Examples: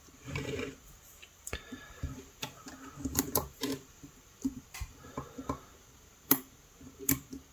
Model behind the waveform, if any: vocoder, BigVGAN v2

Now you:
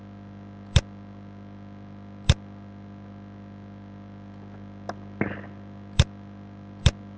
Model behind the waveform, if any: none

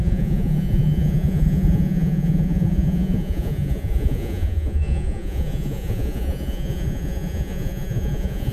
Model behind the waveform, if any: vocoder, Vocos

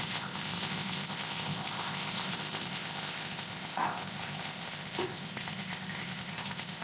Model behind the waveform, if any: codec, ZipCodec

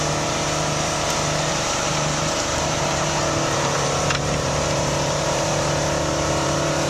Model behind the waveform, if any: vocoder, BigVGAN v2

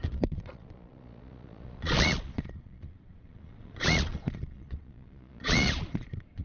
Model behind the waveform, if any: vocoder, Vocos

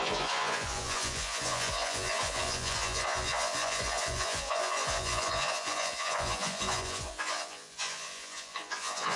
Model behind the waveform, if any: vocoder, Vocos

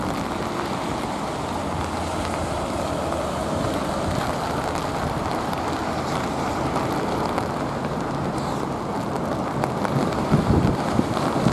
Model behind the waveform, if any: none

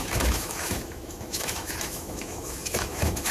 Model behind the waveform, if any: autoencoder, DAC-VAE